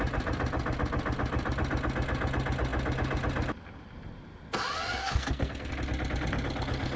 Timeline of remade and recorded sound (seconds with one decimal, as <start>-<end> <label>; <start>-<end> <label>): 0.0-5.0 recorded; 5.0-5.7 remade; 5.7-7.0 recorded